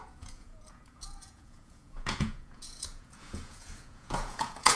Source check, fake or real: fake